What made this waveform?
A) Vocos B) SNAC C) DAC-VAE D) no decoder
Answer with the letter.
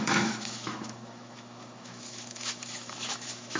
C